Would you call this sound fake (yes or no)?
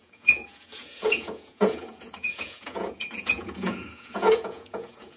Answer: yes